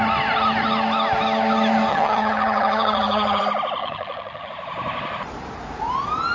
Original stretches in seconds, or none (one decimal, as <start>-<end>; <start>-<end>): 0.0-1.9; 3.4-3.8; 4.5-6.3